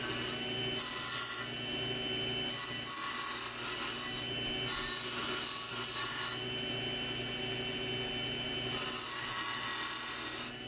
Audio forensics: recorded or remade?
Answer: recorded